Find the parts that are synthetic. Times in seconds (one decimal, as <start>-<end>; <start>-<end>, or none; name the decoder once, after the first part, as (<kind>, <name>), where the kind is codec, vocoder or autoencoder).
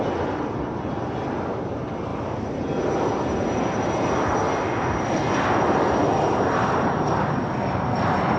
none